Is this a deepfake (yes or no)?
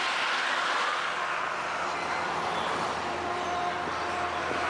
no